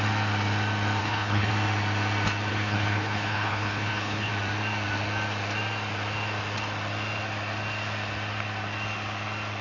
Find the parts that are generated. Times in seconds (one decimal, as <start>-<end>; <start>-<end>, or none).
1.0-1.5; 2.5-4.3